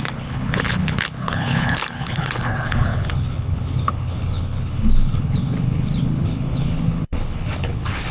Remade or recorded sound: remade